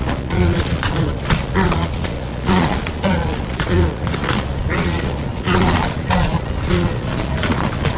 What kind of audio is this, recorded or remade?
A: remade